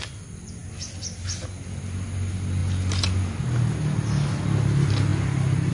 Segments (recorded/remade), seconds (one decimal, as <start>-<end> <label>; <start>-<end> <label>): 0.0-5.7 recorded